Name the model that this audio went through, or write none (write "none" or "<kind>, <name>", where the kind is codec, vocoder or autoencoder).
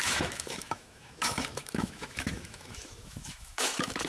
autoencoder, DAC-VAE